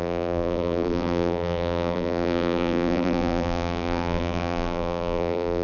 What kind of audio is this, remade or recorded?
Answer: remade